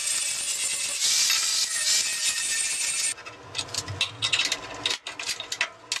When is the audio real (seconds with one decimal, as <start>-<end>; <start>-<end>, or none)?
0.0-6.0